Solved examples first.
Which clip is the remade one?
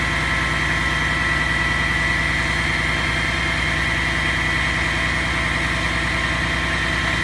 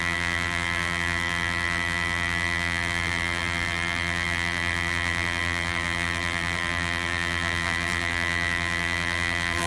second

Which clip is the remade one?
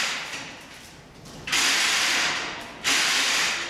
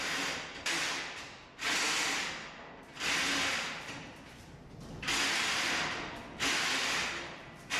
first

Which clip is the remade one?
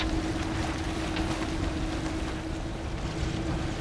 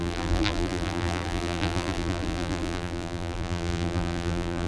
second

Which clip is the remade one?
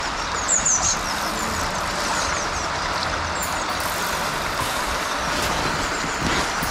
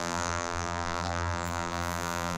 second